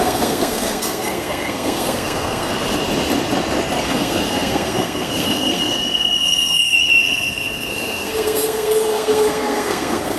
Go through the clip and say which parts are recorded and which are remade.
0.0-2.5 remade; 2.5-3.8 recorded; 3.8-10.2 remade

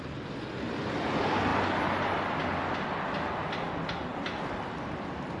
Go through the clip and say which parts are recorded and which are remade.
0.0-5.4 recorded

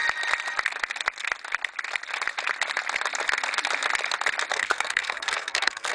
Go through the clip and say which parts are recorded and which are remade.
0.0-4.5 recorded; 4.5-5.9 remade

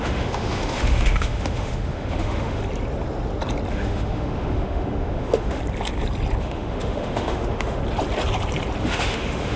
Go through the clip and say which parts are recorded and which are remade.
0.0-2.6 remade; 2.6-3.7 recorded; 3.7-5.6 remade; 5.6-6.4 recorded; 6.4-7.8 remade; 7.8-8.8 recorded; 8.8-9.6 remade

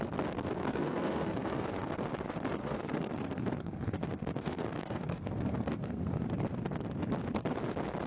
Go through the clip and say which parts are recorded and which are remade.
0.0-0.6 recorded; 0.6-1.9 remade; 1.9-2.6 recorded; 2.6-6.3 remade; 6.3-8.1 recorded

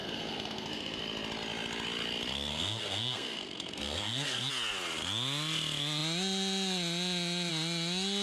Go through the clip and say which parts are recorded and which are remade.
0.0-1.0 remade; 1.0-2.5 recorded; 2.5-4.5 remade; 4.5-8.2 recorded